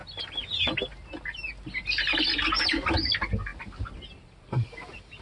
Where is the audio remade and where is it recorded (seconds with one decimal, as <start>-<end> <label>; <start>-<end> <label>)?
0.0-5.2 recorded